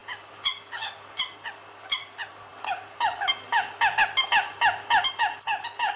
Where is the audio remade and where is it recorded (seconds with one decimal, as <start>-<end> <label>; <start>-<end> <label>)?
0.0-6.0 recorded